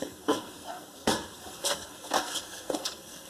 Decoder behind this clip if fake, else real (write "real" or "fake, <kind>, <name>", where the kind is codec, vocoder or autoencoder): fake, codec, SNAC